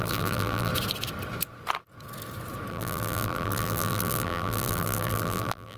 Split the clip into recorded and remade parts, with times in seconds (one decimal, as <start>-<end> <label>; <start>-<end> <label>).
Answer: 0.0-0.7 remade; 0.7-2.7 recorded; 2.7-5.8 remade